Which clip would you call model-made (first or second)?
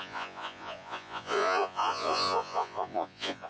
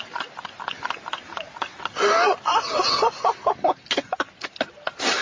first